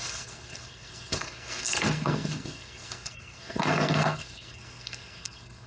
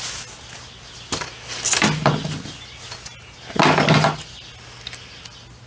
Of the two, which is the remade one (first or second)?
first